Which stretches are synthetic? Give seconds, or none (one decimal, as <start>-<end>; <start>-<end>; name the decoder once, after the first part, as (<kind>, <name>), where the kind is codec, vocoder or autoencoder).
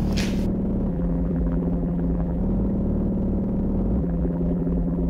0.9-2.4 (vocoder, BigVGAN v2); 4.0-5.1